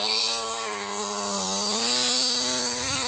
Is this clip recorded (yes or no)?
yes